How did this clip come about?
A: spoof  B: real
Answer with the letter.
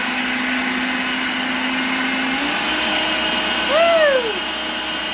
B